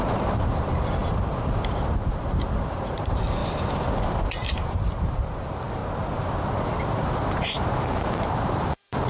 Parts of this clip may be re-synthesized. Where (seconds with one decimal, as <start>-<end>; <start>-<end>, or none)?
0.0-3.4; 4.0-5.8; 6.8-9.1